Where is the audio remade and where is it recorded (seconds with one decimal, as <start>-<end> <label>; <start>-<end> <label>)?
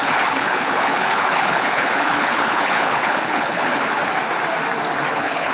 0.0-4.0 remade; 4.0-5.1 recorded; 5.1-5.5 remade